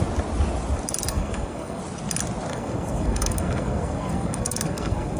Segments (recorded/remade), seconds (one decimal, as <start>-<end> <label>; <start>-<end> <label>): 0.0-1.1 recorded; 1.1-1.8 remade; 1.8-2.5 recorded; 2.5-5.2 remade